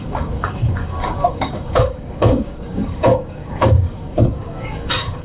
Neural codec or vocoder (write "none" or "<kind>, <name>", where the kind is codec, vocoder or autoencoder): codec, DAC